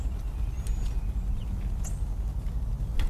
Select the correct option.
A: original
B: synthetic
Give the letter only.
A